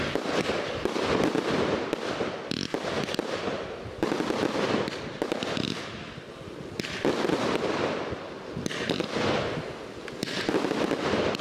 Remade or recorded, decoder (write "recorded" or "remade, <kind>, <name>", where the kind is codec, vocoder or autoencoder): recorded